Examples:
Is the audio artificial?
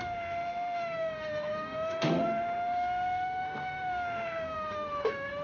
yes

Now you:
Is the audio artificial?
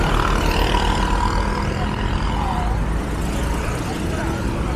no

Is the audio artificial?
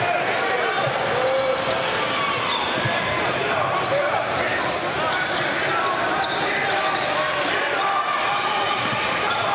no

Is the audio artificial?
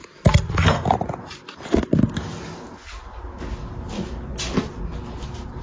no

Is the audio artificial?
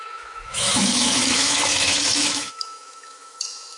yes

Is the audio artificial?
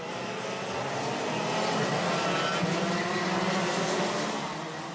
no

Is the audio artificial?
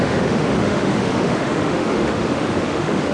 yes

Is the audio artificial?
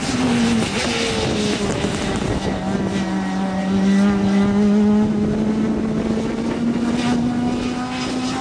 no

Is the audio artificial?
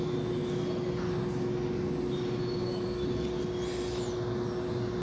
no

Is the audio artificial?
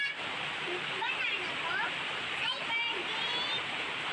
no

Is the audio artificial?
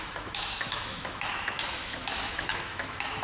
yes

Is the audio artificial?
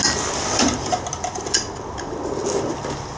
no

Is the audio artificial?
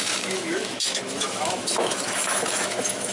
yes